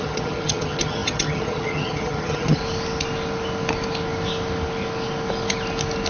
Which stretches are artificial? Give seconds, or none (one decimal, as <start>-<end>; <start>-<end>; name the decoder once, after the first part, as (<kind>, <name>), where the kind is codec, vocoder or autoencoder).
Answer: 0.0-2.6 (vocoder, HiFi-GAN)